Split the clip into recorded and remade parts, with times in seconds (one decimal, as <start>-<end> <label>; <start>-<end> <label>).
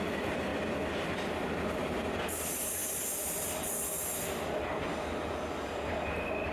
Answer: 0.0-0.5 remade; 0.5-1.7 recorded; 1.7-2.8 remade; 2.8-6.5 recorded